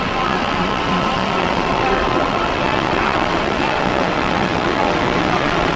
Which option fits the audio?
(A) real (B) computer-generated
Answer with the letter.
B